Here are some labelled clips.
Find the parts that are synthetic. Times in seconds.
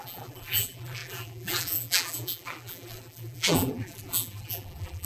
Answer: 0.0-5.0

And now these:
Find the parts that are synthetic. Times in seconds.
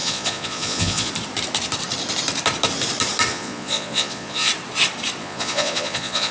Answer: 0.0-1.1; 3.3-4.5; 5.2-6.3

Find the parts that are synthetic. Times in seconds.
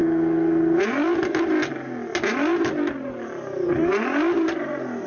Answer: 0.0-0.8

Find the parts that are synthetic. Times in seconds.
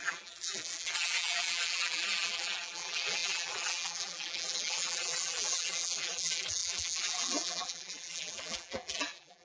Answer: 0.0-9.4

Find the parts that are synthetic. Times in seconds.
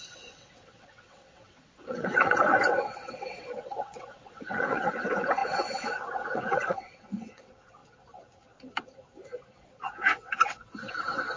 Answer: 0.0-7.8; 10.0-11.4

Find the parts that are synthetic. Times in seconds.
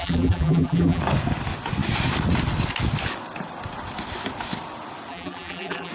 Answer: 0.0-1.0; 5.1-5.9